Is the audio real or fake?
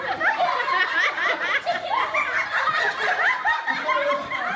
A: real